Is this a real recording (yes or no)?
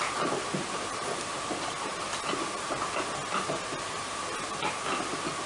yes